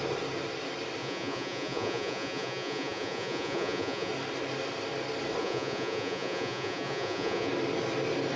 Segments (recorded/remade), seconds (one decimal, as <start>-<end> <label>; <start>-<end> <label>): 0.0-1.0 recorded; 1.0-4.1 remade; 4.1-5.4 recorded; 5.4-7.5 remade; 7.5-8.4 recorded